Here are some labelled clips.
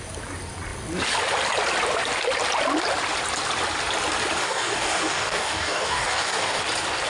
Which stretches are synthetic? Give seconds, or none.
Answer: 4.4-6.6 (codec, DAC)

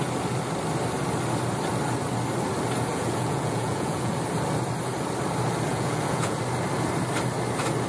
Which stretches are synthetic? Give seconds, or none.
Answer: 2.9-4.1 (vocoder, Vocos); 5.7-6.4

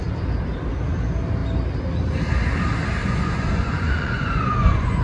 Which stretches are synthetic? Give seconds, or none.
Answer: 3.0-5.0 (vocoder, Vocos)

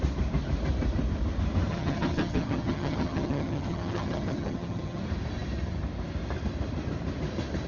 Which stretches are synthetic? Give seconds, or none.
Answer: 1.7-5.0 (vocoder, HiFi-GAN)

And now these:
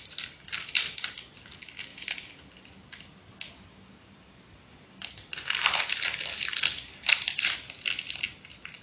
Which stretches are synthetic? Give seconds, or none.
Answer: none